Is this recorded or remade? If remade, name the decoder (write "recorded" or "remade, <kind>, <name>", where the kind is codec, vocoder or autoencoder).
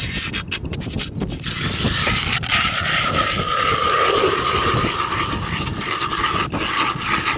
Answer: recorded